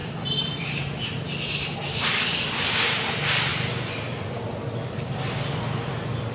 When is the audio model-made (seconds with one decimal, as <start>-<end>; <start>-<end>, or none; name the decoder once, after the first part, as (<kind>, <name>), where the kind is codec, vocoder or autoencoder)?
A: 1.9-2.4 (codec, DAC)